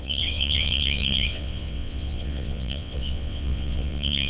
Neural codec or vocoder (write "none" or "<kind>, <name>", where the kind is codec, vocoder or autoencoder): vocoder, WaveNeXt